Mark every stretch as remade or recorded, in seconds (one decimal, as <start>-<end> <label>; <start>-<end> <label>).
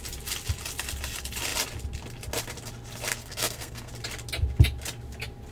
0.0-3.1 recorded; 3.1-3.9 remade; 3.9-5.5 recorded